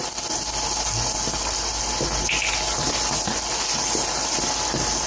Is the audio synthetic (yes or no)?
no